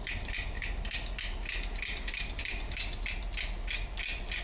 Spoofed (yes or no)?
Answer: yes